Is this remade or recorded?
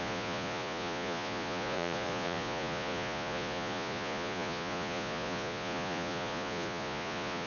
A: remade